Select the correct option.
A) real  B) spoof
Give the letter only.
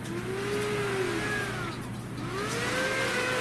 A